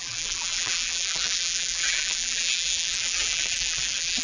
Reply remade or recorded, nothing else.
remade